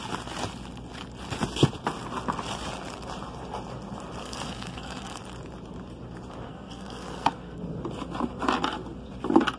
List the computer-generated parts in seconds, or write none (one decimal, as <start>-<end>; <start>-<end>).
4.2-5.2; 6.5-7.6